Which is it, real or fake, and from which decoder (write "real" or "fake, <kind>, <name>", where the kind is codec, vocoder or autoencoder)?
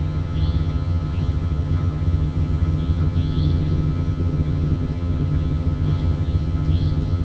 fake, vocoder, HiFi-GAN